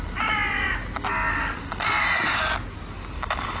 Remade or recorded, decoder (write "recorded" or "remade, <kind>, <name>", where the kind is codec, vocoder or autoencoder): recorded